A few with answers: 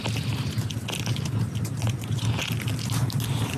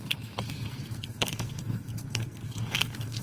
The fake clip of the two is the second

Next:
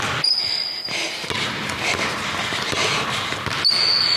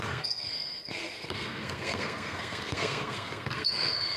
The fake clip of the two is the second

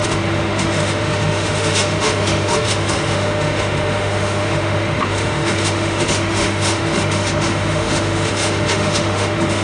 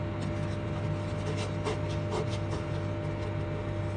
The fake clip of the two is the first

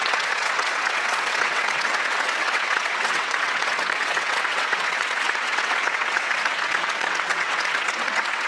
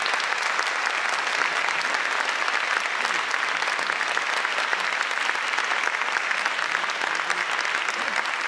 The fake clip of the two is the first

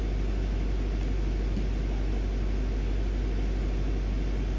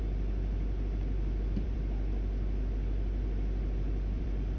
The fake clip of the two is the second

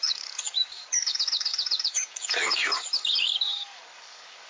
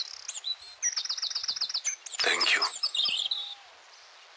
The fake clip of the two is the first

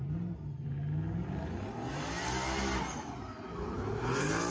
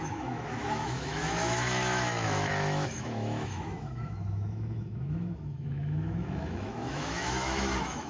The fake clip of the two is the second